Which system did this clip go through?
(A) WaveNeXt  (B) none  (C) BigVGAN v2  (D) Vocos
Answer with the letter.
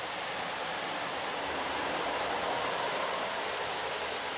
C